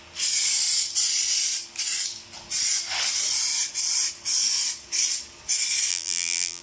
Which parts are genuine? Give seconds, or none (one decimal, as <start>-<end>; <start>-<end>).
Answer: 0.0-5.9